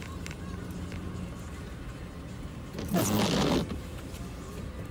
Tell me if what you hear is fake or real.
real